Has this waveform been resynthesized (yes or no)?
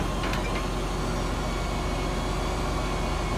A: no